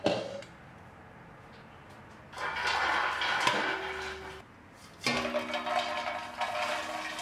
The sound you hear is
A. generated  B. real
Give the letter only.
B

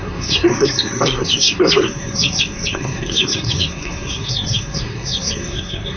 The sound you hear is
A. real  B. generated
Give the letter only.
B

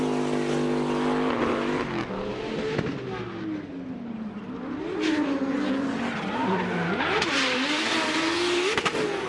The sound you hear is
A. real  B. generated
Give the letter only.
A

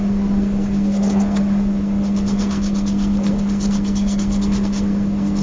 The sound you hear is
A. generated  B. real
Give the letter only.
A